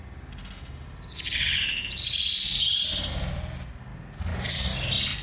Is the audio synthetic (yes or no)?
no